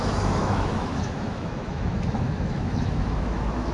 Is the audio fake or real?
fake